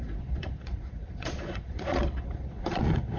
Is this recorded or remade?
remade